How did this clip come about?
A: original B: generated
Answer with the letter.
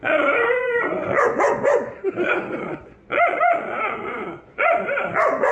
B